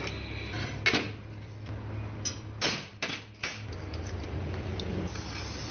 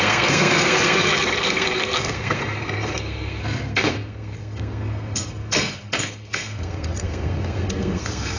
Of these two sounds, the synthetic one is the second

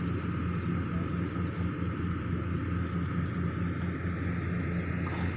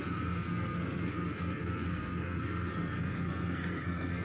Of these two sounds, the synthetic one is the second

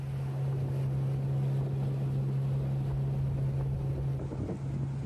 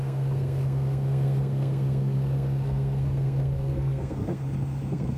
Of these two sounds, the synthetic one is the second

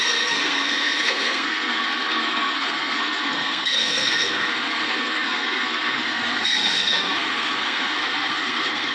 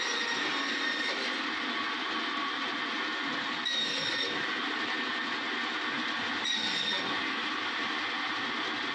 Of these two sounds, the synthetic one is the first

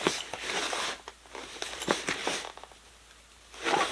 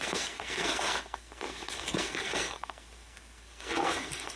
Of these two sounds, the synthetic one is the second